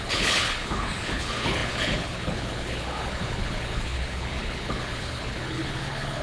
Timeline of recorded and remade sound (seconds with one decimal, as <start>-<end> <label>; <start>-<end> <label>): 0.0-6.2 remade